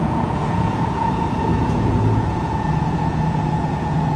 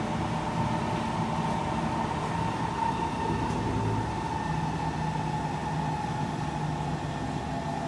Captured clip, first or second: second